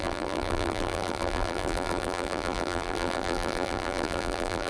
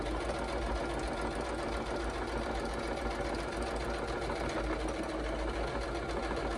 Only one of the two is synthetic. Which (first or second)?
first